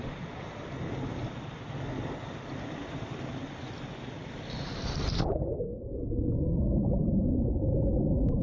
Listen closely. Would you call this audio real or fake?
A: real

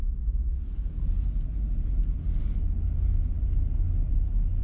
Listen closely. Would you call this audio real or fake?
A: real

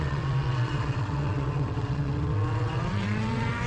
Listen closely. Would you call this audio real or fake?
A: fake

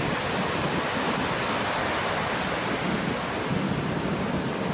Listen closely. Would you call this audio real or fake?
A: real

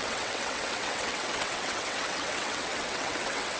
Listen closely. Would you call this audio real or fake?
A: fake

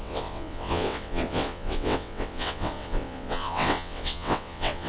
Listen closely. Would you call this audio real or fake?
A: fake